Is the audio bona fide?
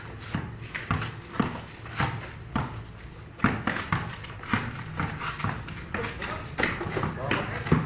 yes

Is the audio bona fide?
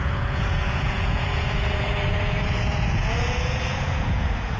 no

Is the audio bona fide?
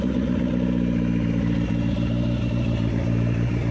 yes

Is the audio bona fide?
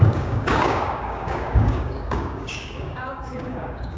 no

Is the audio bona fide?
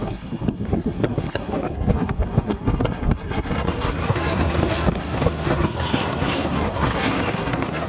no